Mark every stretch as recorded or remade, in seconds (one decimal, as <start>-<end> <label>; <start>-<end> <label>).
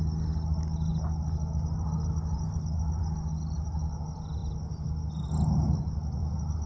0.0-6.7 recorded